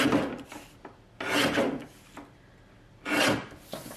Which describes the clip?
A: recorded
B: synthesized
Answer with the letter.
A